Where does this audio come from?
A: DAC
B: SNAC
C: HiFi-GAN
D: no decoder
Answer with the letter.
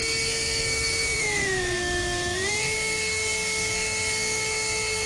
B